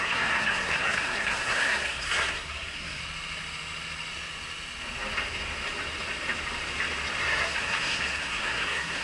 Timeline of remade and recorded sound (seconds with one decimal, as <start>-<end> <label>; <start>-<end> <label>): 0.0-3.0 remade; 3.0-7.2 recorded; 7.2-9.0 remade